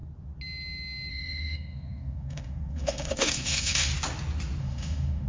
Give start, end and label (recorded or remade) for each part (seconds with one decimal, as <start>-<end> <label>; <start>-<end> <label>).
0.0-1.1 recorded; 1.1-3.9 remade; 3.9-4.6 recorded; 4.6-5.3 remade